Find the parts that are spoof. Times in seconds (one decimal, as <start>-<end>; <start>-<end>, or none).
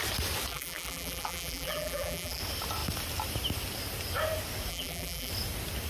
0.5-2.4; 4.7-5.3